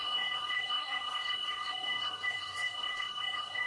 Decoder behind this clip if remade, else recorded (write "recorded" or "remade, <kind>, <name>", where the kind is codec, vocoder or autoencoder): remade, codec, SNAC